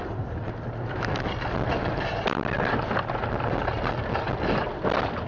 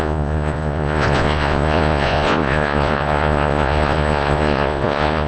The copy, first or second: second